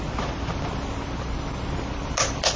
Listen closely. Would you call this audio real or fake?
real